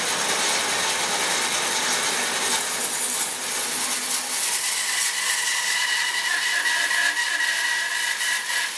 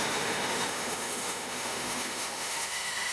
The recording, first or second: first